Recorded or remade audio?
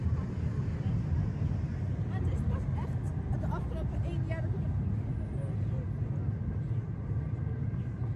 recorded